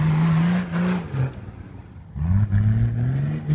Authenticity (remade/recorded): recorded